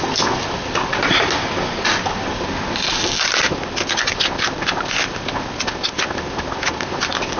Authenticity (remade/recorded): recorded